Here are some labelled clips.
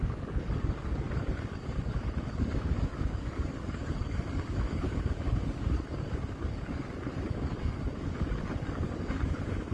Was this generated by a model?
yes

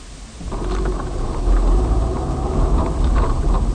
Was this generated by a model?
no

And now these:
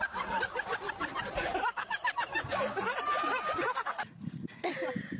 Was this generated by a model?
no